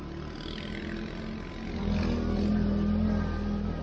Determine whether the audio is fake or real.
real